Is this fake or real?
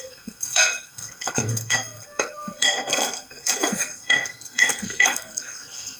fake